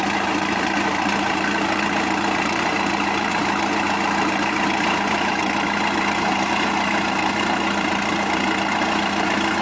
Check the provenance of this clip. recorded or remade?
recorded